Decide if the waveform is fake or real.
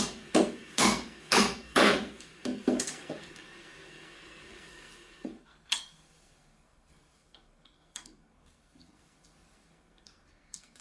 fake